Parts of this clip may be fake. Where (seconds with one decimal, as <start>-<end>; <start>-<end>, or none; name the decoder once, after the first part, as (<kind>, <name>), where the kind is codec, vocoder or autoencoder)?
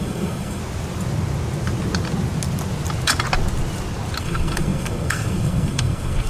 0.0-0.6 (codec, SNAC); 4.2-6.3